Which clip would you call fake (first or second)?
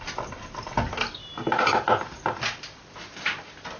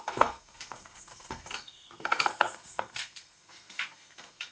second